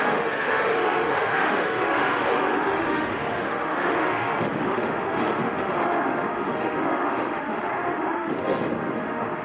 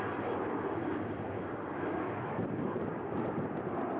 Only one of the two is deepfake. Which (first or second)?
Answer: first